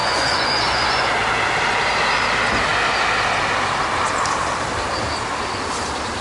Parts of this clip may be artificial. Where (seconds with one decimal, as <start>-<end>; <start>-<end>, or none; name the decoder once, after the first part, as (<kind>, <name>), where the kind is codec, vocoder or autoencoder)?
0.0-1.1 (vocoder, Vocos)